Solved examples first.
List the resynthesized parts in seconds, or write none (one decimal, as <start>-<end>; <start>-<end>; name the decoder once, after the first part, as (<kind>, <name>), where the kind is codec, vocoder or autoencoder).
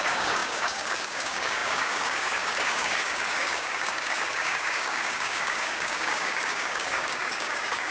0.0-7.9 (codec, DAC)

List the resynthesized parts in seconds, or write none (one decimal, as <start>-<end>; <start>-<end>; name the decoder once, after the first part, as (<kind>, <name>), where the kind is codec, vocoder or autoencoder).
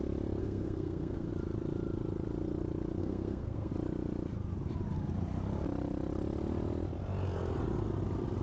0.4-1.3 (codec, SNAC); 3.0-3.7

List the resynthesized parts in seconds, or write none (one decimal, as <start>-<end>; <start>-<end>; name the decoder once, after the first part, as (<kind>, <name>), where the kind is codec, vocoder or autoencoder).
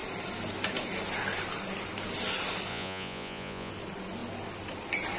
2.7-3.7 (vocoder, Vocos)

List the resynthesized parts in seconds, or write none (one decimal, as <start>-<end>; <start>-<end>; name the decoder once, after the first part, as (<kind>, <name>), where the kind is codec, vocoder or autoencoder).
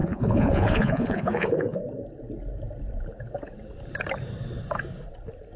0.0-1.8 (vocoder, Vocos)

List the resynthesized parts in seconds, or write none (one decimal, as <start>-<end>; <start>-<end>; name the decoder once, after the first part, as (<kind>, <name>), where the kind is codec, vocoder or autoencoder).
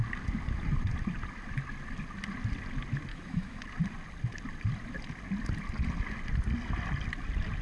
3.1-3.6 (autoencoder, DAC-VAE)